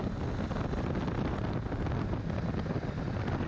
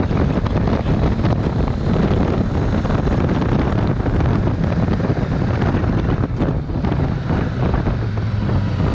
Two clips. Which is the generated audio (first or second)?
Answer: second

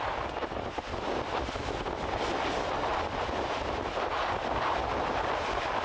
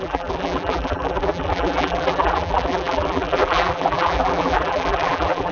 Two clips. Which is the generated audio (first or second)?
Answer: second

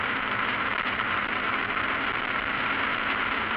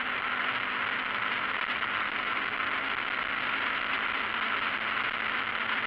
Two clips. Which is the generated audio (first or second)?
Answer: first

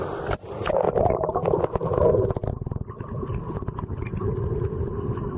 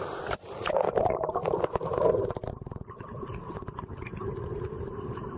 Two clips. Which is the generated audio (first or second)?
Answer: second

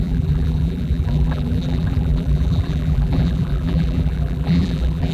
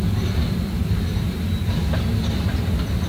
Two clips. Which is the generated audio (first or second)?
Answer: first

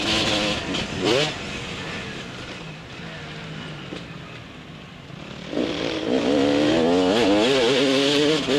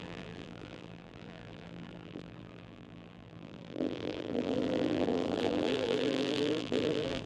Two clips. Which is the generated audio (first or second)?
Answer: second